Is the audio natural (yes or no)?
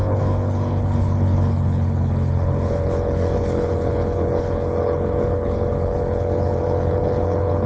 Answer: no